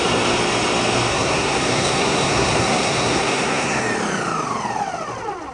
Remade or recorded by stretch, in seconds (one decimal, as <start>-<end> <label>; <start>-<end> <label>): 0.0-1.1 recorded; 1.1-3.8 remade; 3.8-5.5 recorded